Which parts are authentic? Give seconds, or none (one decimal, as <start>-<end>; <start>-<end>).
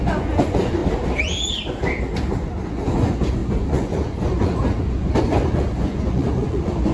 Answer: 0.8-2.7